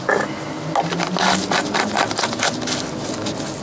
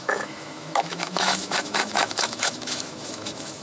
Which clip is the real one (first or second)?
first